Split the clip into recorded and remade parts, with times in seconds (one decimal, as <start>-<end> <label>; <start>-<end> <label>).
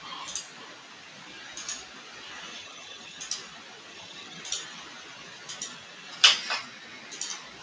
0.0-2.5 recorded; 2.5-3.2 remade; 3.2-3.9 recorded; 3.9-4.4 remade; 4.4-7.6 recorded